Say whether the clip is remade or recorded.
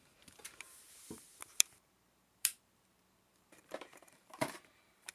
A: remade